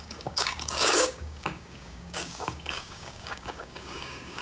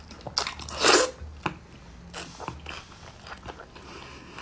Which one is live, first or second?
second